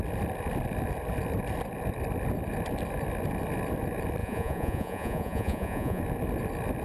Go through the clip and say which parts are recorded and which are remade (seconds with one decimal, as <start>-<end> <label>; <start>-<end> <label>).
0.0-4.2 recorded; 4.2-6.0 remade; 6.0-6.8 recorded